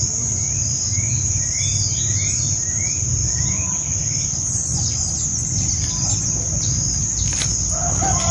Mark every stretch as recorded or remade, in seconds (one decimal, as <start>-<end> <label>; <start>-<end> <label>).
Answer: 0.0-3.2 recorded; 3.2-3.9 remade; 3.9-8.3 recorded